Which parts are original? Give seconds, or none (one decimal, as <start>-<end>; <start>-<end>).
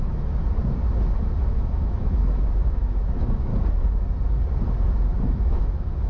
0.4-1.4; 3.5-5.3